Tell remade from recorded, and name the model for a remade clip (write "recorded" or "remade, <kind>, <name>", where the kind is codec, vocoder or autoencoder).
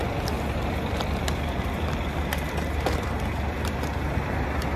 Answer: recorded